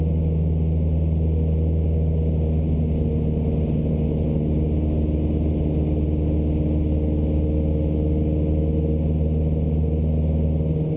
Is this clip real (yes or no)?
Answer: yes